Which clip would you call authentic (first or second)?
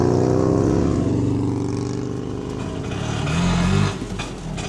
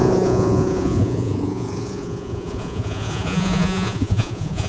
first